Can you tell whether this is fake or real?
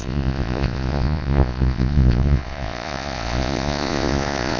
fake